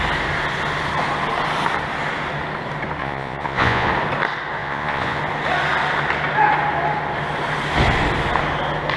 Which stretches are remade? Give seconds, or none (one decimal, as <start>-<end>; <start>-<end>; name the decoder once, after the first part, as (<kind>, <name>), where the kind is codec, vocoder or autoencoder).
3.0-3.9 (vocoder, Vocos); 4.6-5.2